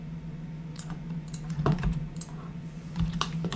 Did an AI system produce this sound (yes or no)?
yes